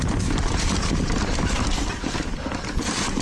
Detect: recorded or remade recorded